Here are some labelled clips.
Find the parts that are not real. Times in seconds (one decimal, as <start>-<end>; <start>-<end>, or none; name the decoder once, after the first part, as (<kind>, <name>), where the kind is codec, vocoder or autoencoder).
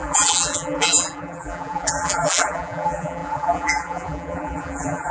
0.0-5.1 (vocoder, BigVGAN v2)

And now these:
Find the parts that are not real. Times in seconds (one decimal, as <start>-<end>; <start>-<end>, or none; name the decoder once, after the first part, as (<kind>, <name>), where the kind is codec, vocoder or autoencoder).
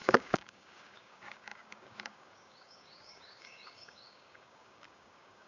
0.0-5.5 (codec, DAC)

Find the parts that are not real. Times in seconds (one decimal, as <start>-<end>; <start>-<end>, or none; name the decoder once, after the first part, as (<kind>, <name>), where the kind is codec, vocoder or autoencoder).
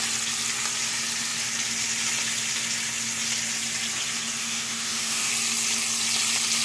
4.4-5.3 (autoencoder, DAC-VAE)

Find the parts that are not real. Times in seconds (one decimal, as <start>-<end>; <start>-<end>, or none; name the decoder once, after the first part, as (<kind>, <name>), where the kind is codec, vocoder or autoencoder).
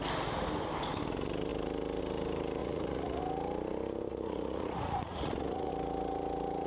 2.6-3.2 (vocoder, Vocos); 4.1-5.7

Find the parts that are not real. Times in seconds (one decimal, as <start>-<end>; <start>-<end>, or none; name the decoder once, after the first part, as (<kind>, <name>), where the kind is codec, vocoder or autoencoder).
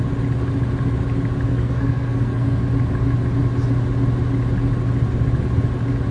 1.5-2.6 (codec, SNAC)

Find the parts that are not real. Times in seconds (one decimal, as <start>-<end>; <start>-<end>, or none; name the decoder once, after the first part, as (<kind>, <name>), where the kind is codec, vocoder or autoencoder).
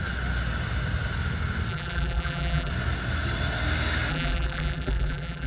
1.7-2.7 (vocoder, BigVGAN v2); 4.1-5.5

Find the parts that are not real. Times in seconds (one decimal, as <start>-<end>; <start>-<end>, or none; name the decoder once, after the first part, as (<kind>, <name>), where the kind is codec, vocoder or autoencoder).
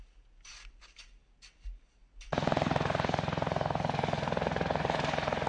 none